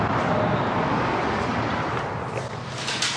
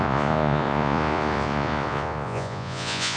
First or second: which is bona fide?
first